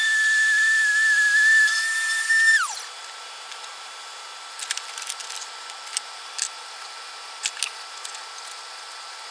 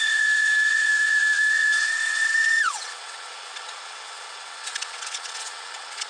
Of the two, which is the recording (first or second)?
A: first